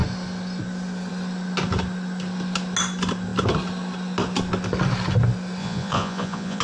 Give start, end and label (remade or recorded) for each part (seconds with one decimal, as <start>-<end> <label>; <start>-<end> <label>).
0.0-5.6 recorded; 5.6-6.6 remade